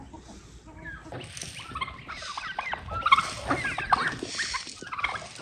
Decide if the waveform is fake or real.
real